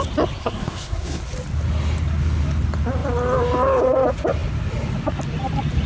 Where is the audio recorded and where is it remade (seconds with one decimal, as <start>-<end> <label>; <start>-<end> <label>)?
0.0-0.4 recorded; 0.4-1.2 remade; 1.2-5.9 recorded

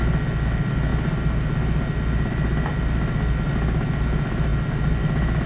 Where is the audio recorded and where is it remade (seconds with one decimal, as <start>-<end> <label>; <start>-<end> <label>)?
0.0-5.5 recorded